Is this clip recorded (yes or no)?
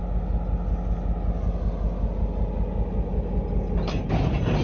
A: yes